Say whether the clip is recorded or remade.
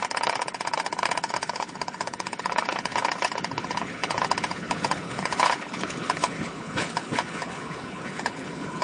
remade